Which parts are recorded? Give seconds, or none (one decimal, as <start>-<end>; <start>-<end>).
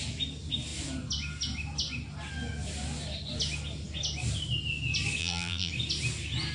0.0-5.2; 5.7-6.5